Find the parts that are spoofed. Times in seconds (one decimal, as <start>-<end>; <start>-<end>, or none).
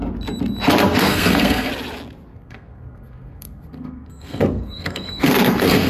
1.0-1.7; 2.3-5.9